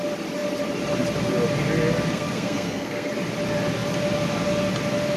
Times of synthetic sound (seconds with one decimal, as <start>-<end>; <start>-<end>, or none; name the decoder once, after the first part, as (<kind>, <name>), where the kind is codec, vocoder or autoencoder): 2.1-3.1 (codec, SNAC)